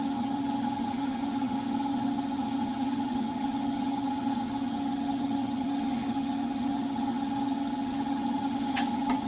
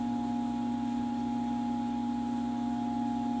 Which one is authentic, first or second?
second